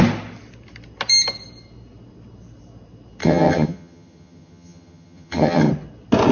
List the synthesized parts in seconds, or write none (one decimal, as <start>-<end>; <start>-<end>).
3.2-5.7